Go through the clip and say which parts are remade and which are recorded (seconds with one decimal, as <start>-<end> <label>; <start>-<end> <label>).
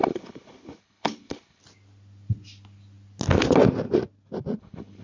0.0-1.6 remade; 1.6-4.6 recorded; 4.6-5.0 remade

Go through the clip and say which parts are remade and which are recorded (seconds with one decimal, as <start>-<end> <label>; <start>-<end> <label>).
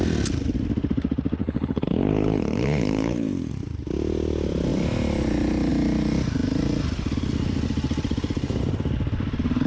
0.0-1.4 recorded; 1.4-3.5 remade; 3.5-9.7 recorded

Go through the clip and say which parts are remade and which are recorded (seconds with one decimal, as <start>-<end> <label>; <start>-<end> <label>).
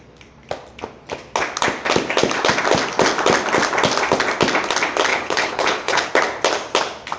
0.0-5.1 recorded; 5.1-6.1 remade; 6.1-7.2 recorded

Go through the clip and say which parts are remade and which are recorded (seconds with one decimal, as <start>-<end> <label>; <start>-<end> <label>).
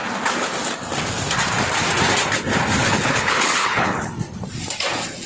0.0-2.8 recorded; 2.8-4.1 remade; 4.1-5.3 recorded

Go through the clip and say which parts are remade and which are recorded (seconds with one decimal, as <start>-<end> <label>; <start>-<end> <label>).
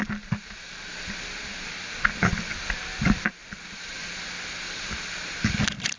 0.0-6.0 recorded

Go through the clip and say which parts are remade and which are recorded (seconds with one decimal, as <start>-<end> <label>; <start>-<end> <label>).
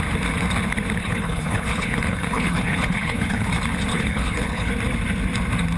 0.0-1.0 recorded; 1.0-3.5 remade; 3.5-3.9 recorded; 3.9-4.7 remade; 4.7-5.8 recorded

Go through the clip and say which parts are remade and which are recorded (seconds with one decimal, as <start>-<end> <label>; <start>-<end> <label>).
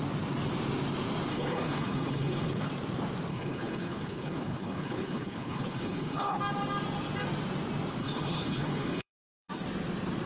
0.0-1.3 recorded; 1.3-2.7 remade; 2.7-3.3 recorded; 3.3-6.4 remade; 6.4-8.0 recorded; 8.0-9.5 remade; 9.5-10.3 recorded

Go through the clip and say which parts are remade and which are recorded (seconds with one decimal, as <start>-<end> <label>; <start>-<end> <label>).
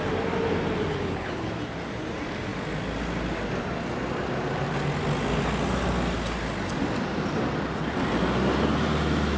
0.0-0.9 recorded; 0.9-1.5 remade; 1.5-9.4 recorded